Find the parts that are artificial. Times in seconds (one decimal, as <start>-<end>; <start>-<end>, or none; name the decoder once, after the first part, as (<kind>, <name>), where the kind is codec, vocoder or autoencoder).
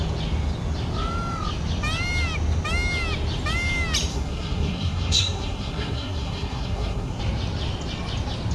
4.1-7.2 (codec, SNAC)